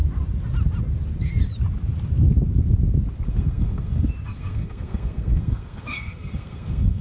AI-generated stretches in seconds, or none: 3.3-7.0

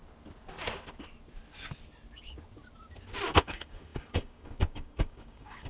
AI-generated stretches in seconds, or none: 3.4-5.7